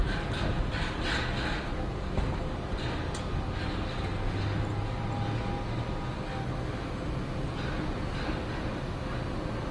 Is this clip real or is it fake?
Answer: real